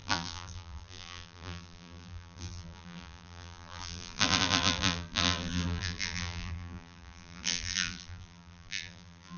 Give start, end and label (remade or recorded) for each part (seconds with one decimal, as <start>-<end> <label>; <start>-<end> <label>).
0.0-9.4 remade